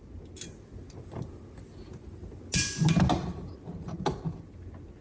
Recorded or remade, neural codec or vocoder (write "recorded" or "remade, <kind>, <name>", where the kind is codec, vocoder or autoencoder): recorded